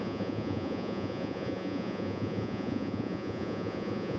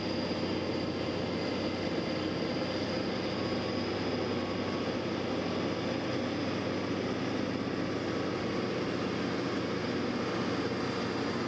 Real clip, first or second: second